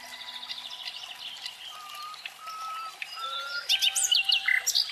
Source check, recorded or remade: recorded